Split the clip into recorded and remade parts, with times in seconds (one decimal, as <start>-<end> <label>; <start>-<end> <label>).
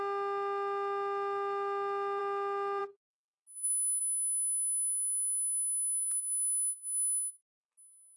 0.0-8.2 recorded